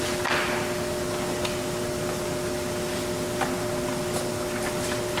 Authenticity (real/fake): real